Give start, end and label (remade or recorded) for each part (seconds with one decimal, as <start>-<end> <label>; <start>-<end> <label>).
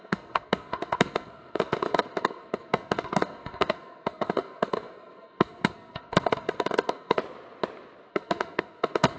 0.0-7.2 remade; 7.2-8.1 recorded; 8.1-9.2 remade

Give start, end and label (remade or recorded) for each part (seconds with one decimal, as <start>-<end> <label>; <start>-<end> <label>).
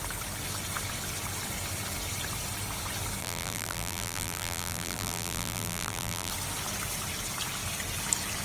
0.0-3.2 recorded; 3.2-6.3 remade; 6.3-8.4 recorded